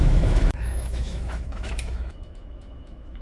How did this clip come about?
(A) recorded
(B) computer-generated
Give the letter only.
B